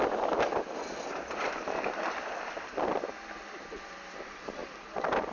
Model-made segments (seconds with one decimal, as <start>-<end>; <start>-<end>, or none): none